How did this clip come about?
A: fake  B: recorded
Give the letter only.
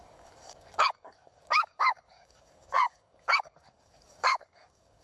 A